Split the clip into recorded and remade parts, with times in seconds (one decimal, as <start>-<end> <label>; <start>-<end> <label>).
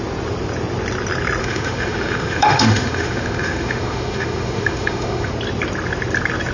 0.0-1.4 recorded; 1.4-5.3 remade; 5.3-6.5 recorded